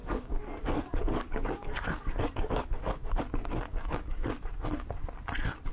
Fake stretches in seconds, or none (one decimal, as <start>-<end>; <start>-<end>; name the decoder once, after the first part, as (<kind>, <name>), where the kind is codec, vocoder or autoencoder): 0.0-3.2 (codec, DAC); 3.7-4.3